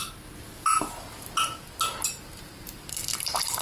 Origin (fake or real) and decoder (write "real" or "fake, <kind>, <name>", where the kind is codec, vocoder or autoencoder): real